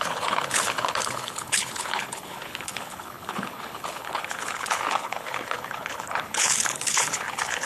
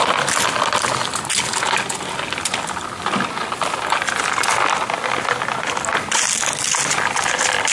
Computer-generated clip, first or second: first